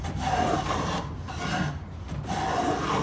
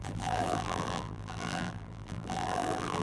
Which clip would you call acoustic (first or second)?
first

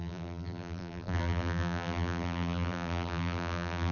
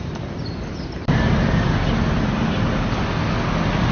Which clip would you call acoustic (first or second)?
second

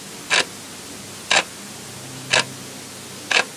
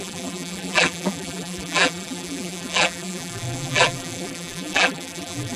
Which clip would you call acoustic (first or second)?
first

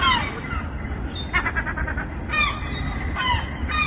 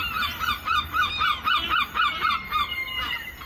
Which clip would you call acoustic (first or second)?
first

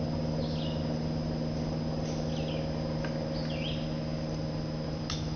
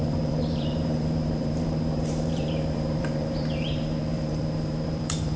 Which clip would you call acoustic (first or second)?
first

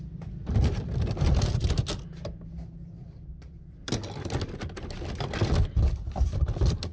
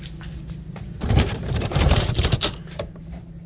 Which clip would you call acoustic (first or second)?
first